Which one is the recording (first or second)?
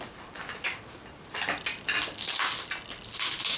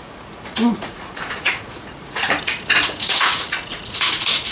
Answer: first